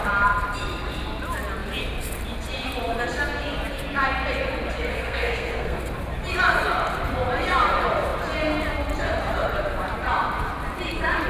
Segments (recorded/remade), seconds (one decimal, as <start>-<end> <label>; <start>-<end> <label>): 0.0-4.9 recorded; 4.9-5.8 remade; 5.8-11.3 recorded